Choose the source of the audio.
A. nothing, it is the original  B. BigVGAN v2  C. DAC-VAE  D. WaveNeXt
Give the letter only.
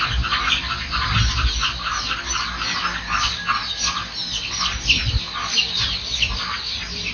A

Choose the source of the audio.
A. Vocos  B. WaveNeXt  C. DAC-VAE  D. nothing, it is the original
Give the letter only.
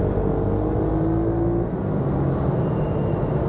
D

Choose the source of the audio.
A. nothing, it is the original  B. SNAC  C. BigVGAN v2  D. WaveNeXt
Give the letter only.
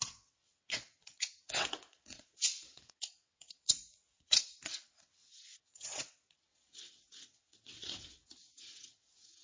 D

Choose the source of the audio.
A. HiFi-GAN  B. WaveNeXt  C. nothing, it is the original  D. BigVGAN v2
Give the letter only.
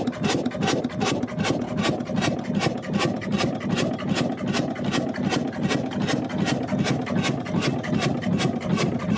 C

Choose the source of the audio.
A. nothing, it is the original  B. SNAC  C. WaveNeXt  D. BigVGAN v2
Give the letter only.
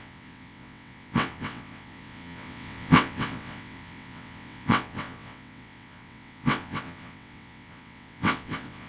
C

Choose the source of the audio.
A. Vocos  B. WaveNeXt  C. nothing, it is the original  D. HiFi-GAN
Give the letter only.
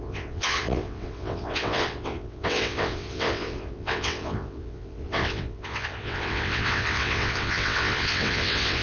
B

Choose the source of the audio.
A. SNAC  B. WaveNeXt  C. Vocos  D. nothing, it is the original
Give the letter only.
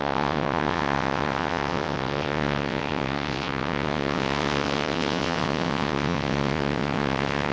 B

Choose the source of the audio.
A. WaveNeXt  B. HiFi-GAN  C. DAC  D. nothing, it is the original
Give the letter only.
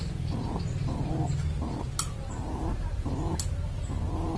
D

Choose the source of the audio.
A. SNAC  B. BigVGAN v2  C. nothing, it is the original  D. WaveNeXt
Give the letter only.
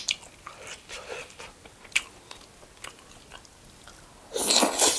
C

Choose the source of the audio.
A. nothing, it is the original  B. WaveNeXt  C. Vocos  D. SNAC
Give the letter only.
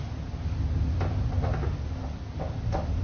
A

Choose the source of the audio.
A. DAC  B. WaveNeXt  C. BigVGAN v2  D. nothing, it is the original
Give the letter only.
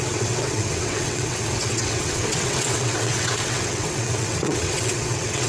B